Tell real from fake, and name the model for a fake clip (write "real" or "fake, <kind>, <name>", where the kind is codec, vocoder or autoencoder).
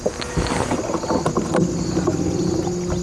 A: real